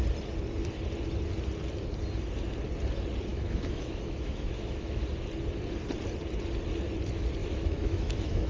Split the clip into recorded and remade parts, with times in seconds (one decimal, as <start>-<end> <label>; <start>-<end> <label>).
0.0-3.3 recorded; 3.3-5.0 remade; 5.0-7.4 recorded; 7.4-8.5 remade